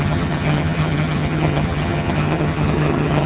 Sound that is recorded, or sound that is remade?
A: remade